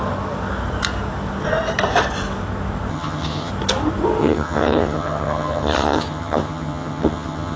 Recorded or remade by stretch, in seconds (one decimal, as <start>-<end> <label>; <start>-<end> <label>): 0.0-2.9 recorded; 2.9-3.5 remade; 3.5-4.2 recorded; 4.2-7.6 remade